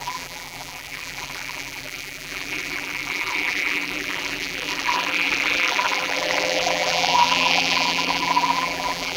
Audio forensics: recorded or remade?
remade